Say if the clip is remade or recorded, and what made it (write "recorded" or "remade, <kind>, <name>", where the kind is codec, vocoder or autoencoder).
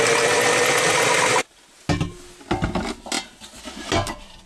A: recorded